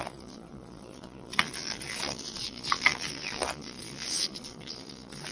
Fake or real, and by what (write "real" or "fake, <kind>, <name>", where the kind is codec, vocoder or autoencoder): fake, vocoder, Vocos